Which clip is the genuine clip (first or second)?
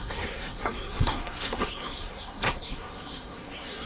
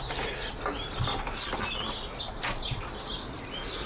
second